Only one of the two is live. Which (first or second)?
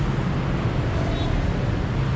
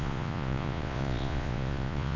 first